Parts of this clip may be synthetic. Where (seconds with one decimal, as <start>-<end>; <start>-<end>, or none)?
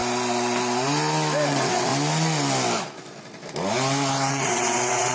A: 1.5-1.9; 4.3-5.1